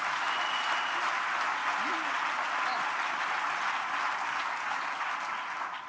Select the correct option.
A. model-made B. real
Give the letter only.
B